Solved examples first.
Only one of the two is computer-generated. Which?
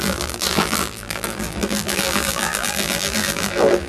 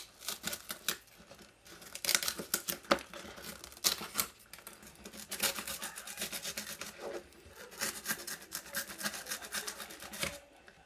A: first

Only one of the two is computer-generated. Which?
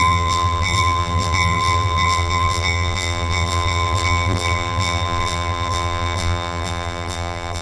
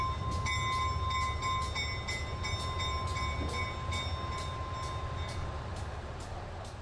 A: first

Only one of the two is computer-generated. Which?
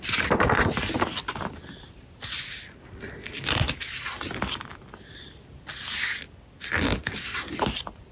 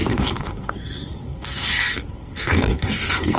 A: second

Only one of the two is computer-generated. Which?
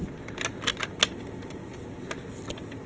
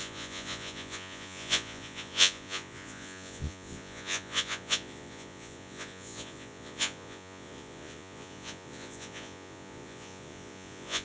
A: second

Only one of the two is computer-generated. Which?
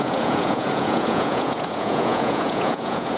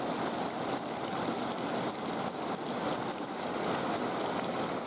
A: first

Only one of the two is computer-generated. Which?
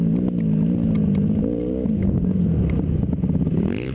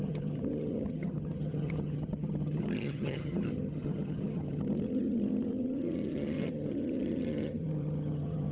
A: second